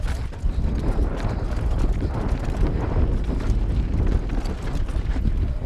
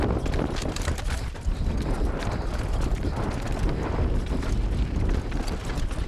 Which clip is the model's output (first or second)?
second